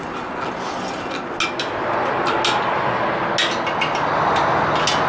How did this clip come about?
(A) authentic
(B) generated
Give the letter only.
A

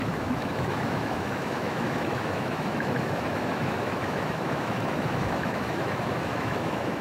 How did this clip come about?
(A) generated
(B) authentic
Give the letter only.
A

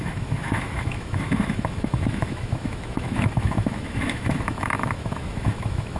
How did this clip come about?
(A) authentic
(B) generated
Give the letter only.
B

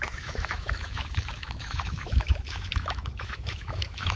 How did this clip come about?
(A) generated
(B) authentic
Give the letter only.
A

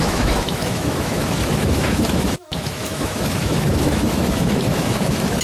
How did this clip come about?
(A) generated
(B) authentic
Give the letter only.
A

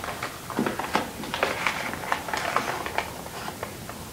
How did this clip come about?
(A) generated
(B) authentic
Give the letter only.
B